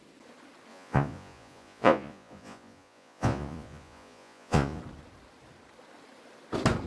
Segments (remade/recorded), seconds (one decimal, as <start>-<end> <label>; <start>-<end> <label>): 0.0-0.7 recorded; 0.7-4.8 remade; 4.8-6.9 recorded